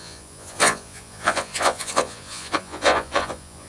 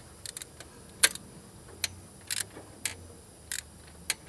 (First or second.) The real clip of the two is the second